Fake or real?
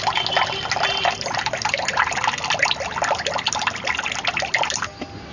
real